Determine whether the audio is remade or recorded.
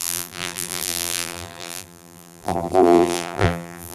remade